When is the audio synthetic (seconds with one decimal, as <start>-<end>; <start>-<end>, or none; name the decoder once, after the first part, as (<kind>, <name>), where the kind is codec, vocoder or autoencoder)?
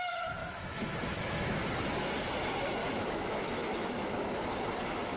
0.4-1.6 (autoencoder, DAC-VAE); 2.8-4.6